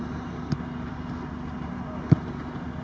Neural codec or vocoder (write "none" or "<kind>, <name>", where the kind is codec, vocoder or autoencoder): none